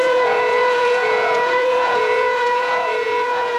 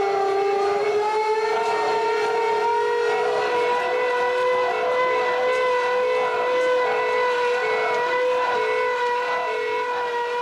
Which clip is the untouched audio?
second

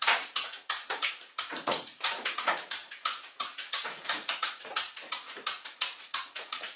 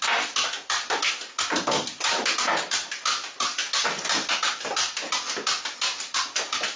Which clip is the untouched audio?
second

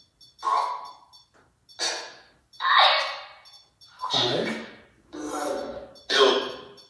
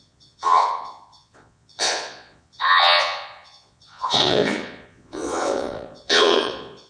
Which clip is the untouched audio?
first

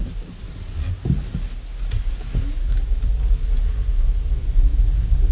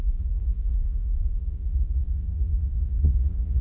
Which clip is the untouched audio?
first